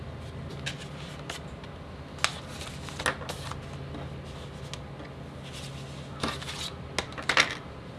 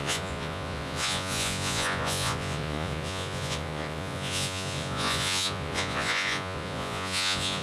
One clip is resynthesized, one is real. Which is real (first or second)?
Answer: first